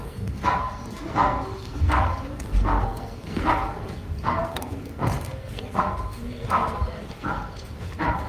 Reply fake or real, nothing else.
fake